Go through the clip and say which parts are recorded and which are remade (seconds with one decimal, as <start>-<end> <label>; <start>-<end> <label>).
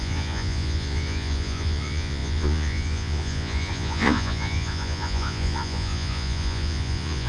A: 0.0-7.3 remade